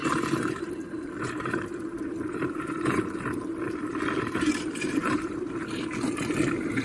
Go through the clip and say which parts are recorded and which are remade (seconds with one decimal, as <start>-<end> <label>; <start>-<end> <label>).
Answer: 0.0-6.8 remade